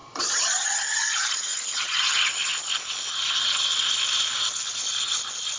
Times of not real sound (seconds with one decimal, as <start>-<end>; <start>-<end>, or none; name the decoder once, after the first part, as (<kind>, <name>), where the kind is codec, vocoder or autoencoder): 0.0-1.1 (vocoder, Vocos); 1.5-2.1